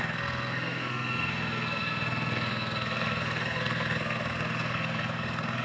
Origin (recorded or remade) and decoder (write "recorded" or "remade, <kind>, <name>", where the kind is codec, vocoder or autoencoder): remade, codec, SNAC